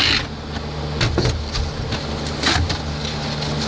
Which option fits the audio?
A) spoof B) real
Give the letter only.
B